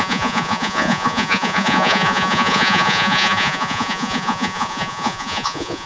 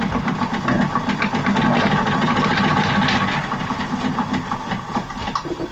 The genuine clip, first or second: second